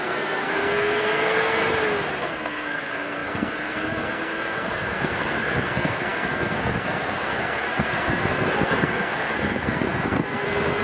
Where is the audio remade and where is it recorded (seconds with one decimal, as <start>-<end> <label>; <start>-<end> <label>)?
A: 0.0-1.6 remade; 1.6-2.2 recorded; 2.2-10.8 remade